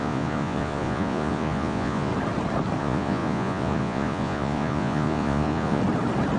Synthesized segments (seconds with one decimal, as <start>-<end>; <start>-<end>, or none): 0.0-2.1; 2.8-5.8